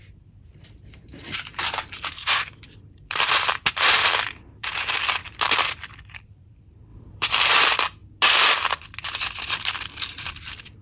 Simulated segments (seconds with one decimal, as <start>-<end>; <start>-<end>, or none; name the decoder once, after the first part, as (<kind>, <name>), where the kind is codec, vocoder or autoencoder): 0.0-5.2 (vocoder, BigVGAN v2); 6.2-8.0; 9.7-10.8